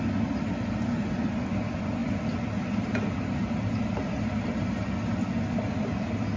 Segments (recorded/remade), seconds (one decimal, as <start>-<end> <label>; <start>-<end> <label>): 0.0-6.4 recorded